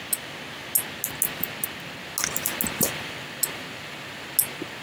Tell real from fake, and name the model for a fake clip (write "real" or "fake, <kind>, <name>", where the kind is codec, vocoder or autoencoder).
real